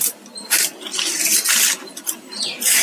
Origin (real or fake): real